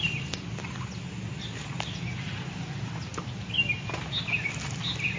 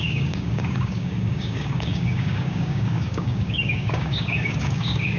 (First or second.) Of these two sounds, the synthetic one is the second